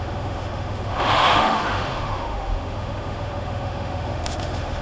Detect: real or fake fake